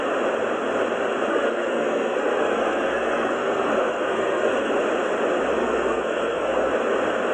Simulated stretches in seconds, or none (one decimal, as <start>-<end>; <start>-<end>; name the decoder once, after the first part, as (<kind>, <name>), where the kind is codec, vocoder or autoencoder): 1.3-4.7 (codec, SNAC); 5.6-6.7